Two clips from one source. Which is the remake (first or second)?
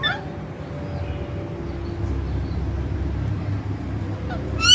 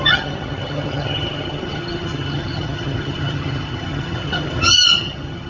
second